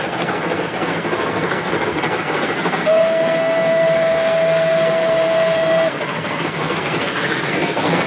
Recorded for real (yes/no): no